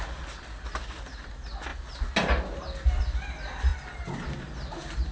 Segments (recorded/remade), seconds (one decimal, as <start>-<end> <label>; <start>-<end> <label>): 0.0-5.1 recorded